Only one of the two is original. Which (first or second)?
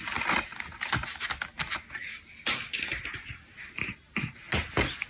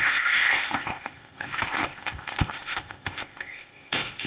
first